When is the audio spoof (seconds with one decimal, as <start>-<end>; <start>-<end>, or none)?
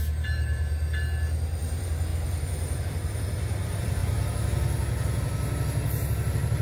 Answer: 0.0-0.8; 1.6-4.0